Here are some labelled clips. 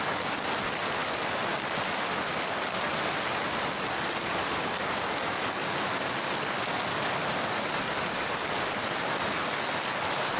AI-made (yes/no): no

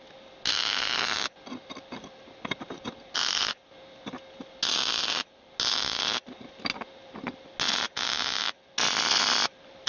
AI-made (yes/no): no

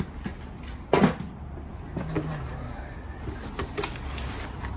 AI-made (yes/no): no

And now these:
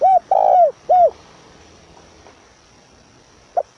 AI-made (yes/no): no